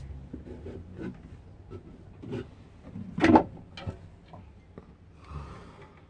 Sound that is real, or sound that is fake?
real